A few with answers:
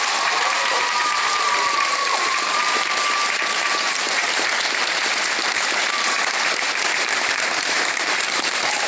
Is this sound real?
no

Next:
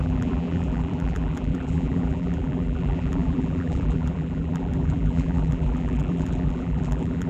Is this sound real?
no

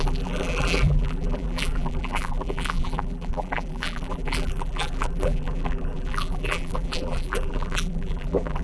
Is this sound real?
no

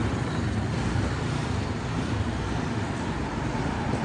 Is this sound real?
no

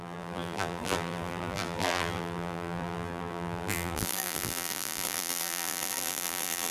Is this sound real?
no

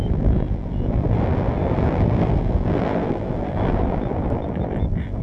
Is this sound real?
no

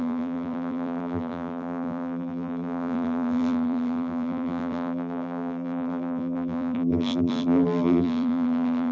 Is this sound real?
no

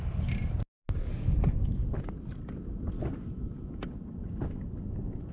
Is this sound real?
yes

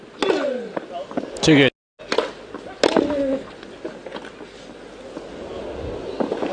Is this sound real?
yes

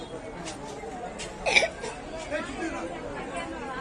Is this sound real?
yes